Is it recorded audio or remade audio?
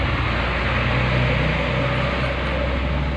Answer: recorded